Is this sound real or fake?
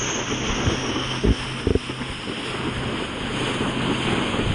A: real